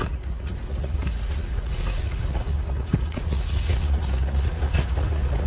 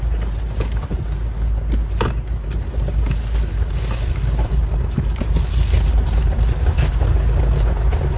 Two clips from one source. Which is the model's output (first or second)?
first